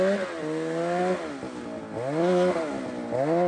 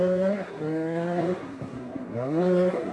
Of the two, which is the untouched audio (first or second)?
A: first